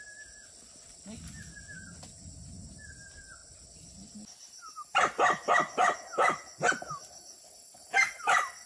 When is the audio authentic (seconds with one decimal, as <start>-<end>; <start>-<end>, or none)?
0.0-8.7